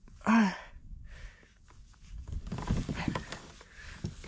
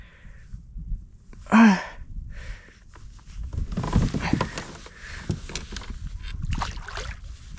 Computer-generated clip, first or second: first